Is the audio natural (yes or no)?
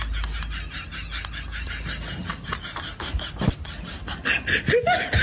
yes